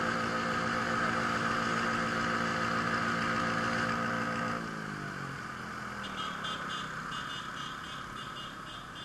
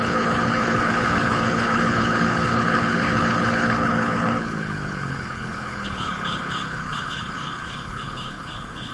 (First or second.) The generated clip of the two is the second